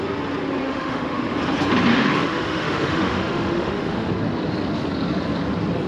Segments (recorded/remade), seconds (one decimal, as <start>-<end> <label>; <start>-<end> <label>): 0.0-0.6 recorded; 0.6-1.3 remade; 1.3-1.9 recorded; 1.9-4.1 remade; 4.1-5.9 recorded